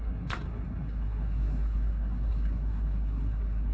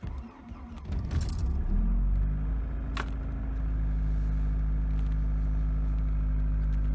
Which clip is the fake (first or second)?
first